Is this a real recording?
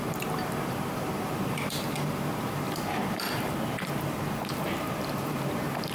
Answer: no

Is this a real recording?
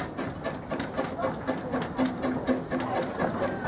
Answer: yes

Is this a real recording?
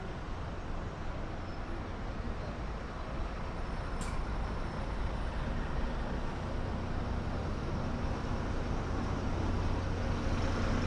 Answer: yes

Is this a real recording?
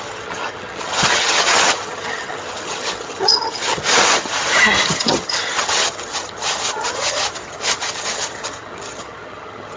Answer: no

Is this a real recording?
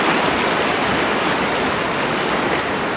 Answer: yes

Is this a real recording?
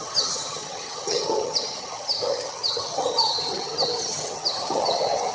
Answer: no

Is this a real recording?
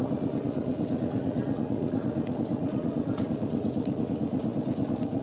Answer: no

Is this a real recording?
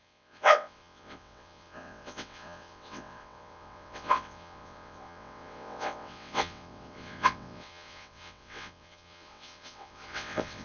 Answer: no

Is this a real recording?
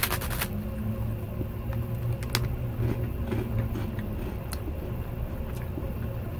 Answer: yes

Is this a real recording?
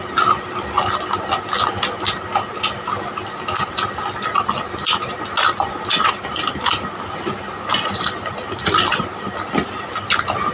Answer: yes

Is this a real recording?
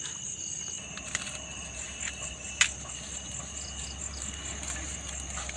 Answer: yes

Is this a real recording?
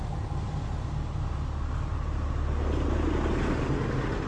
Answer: yes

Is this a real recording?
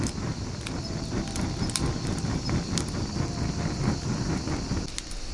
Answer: yes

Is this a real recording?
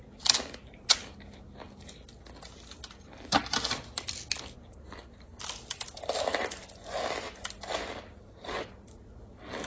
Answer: yes